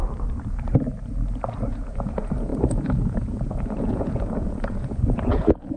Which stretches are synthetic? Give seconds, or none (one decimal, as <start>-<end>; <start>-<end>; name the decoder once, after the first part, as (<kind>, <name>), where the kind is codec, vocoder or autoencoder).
1.7-5.8 (vocoder, Vocos)